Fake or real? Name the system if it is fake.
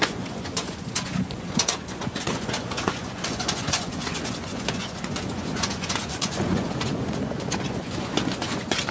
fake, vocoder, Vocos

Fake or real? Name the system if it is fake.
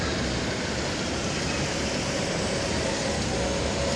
real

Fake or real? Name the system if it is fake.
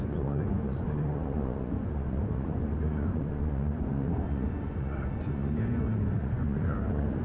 fake, vocoder, Vocos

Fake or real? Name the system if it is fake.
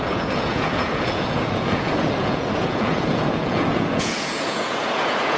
fake, vocoder, Vocos